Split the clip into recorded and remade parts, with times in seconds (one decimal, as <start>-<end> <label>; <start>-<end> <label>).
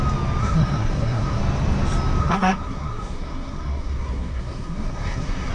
0.0-0.4 recorded; 0.4-1.4 remade; 1.4-2.2 recorded; 2.2-5.5 remade